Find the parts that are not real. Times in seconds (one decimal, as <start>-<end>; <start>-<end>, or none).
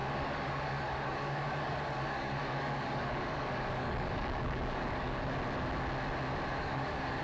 0.0-5.3; 6.5-7.2